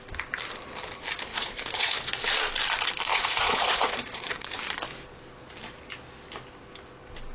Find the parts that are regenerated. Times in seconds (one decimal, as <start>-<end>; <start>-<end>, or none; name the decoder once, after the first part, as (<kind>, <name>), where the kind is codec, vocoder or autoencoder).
1.3-2.1 (vocoder, Vocos); 3.1-4.5